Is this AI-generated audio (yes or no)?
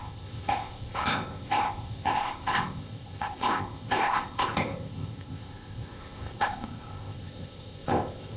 yes